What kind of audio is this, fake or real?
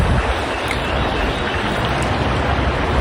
real